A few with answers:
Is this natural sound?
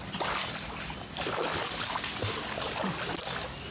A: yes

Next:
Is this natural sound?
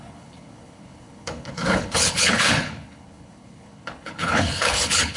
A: no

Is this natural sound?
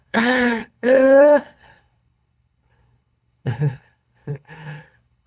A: no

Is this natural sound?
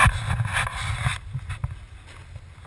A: yes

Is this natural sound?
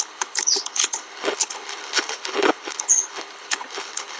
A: no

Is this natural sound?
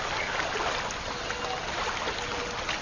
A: yes